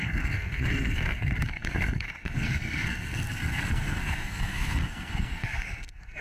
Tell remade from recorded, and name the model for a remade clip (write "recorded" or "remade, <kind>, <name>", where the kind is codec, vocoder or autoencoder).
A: remade, codec, SNAC